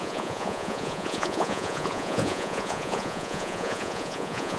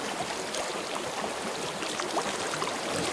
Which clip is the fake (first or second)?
first